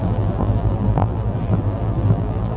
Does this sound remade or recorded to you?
remade